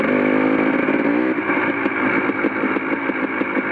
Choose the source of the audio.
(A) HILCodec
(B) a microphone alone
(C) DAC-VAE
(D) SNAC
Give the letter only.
B